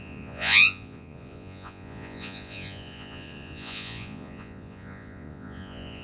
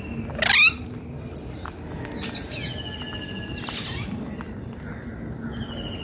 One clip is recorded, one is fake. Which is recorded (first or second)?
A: second